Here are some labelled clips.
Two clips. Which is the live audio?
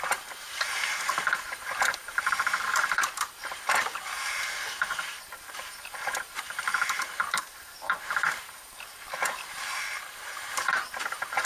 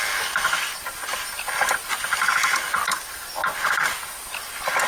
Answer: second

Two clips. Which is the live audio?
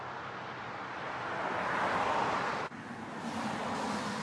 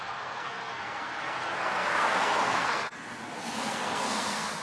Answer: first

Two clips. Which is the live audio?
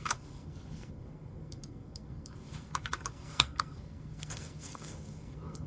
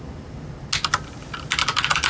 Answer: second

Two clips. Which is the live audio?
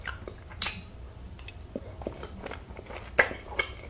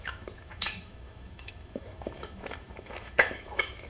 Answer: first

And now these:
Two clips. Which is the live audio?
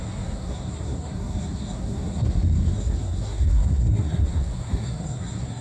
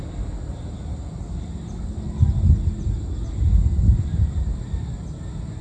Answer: second